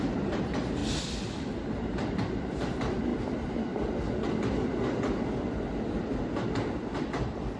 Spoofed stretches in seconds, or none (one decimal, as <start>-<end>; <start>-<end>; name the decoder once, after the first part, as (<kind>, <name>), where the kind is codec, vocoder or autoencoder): 0.0-0.8 (vocoder, BigVGAN v2); 1.7-3.1